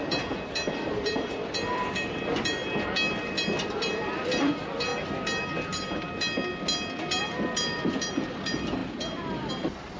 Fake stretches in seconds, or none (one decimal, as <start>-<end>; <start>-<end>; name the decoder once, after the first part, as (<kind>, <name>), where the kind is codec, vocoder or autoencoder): 0.0-2.6 (vocoder, BigVGAN v2); 3.2-4.9; 7.2-10.0